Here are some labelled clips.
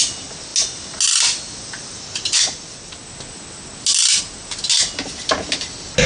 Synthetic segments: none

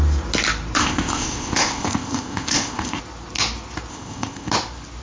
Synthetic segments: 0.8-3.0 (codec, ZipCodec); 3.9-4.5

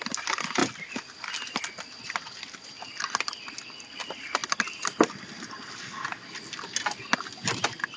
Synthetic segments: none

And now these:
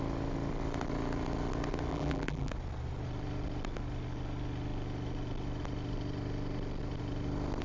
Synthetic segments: 1.9-2.5 (vocoder, BigVGAN v2)

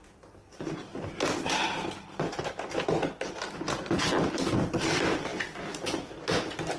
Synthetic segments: none

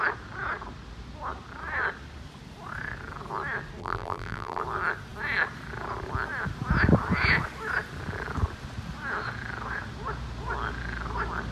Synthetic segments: 3.8-4.6 (vocoder, BigVGAN v2)

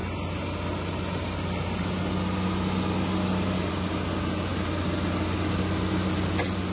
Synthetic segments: none